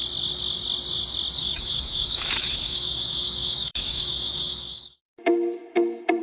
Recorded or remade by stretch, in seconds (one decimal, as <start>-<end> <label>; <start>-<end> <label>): 0.0-1.4 recorded; 1.4-5.1 remade; 5.1-6.2 recorded